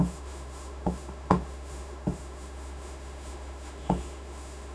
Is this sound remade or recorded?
remade